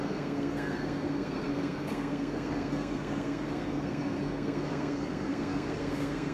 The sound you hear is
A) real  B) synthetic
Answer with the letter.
B